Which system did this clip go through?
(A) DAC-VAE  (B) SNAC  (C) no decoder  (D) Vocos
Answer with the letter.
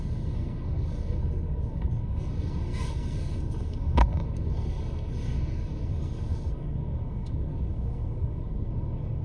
B